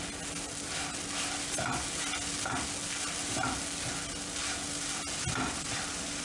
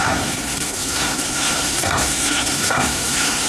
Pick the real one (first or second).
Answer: first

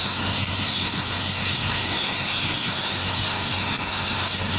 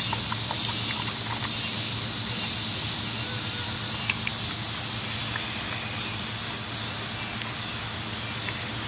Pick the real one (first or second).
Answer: second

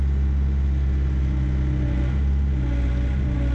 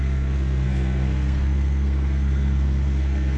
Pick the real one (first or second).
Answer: first